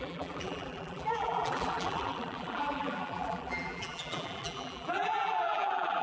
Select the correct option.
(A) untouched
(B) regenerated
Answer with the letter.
B